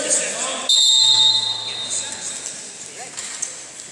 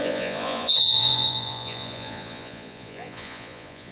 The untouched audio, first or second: first